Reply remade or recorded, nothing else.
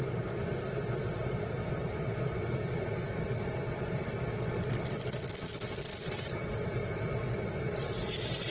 remade